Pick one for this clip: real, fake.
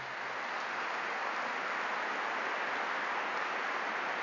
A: real